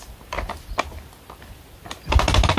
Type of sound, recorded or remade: recorded